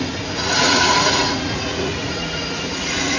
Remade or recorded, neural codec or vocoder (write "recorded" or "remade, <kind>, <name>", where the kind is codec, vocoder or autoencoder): remade, vocoder, Vocos